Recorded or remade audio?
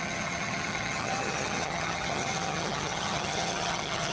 remade